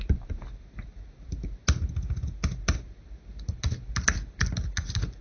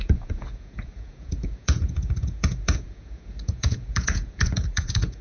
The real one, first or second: first